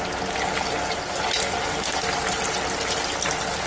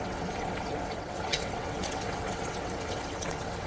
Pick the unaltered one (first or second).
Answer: first